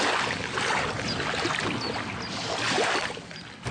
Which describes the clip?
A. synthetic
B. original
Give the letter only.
B